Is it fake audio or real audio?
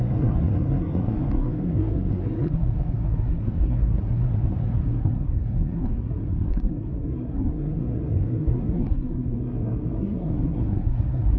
fake